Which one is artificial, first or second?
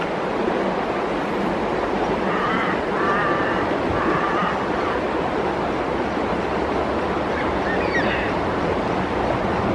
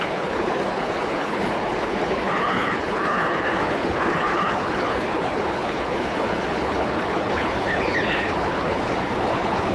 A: second